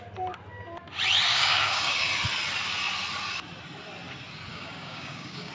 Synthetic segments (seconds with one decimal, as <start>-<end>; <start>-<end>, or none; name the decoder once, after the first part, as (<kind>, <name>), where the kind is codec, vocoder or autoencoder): 1.3-2.1 (codec, DAC); 4.5-5.5